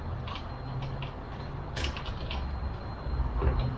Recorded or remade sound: recorded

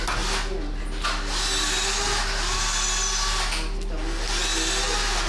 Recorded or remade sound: recorded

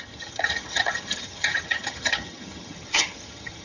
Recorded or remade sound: remade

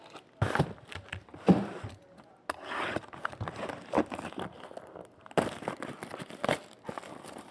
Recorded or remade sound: recorded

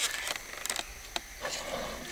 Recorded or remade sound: recorded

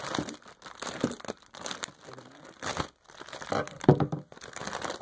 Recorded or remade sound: recorded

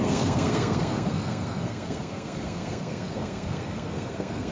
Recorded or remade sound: remade